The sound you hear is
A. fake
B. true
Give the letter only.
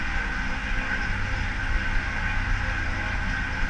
B